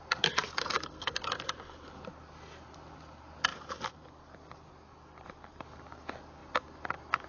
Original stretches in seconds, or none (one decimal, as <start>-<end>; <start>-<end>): 0.0-0.6; 1.2-7.3